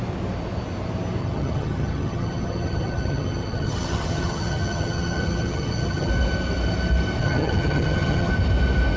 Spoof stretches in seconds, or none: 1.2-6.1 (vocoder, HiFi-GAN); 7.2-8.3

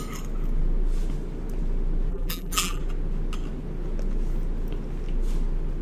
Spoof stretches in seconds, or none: 2.1-2.8 (vocoder, BigVGAN v2)

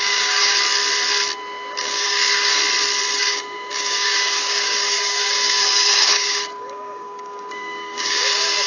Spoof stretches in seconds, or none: 0.0-0.6 (codec, DAC); 1.8-2.6; 3.2-8.7

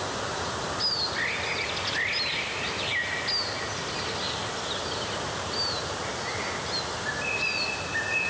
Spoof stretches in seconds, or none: none

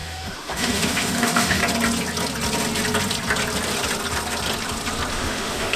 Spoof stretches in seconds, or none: 0.0-1.6 (autoencoder, DAC-VAE); 5.1-5.8

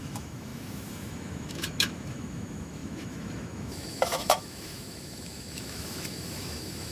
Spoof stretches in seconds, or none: 0.0-6.9 (autoencoder, DAC-VAE)

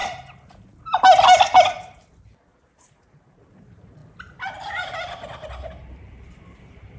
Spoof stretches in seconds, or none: 2.5-4.0 (vocoder, BigVGAN v2); 4.7-7.0